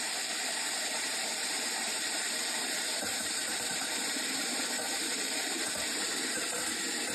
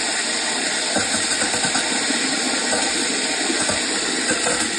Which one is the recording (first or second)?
second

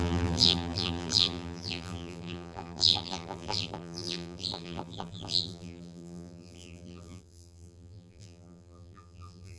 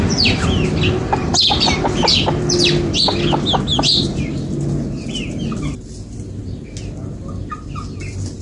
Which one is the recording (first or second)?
second